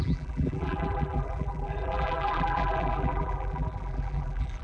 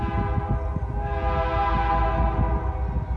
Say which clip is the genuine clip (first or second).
second